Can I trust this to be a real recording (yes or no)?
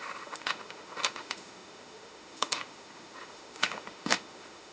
no